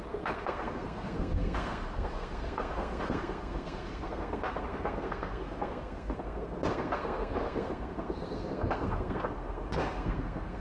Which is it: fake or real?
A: fake